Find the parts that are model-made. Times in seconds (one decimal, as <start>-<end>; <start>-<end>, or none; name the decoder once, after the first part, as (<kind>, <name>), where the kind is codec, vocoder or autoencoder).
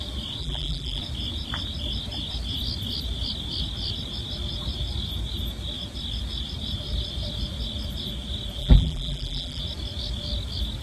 0.4-1.0 (vocoder, BigVGAN v2); 8.6-9.6